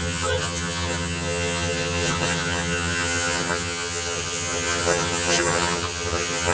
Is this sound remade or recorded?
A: remade